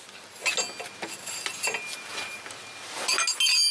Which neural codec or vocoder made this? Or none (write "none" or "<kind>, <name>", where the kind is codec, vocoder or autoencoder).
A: none